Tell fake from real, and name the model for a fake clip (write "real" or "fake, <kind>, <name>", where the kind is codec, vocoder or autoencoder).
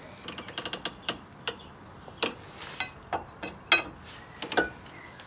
real